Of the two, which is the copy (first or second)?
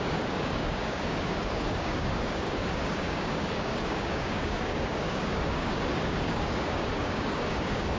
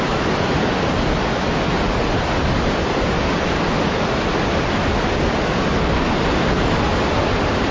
first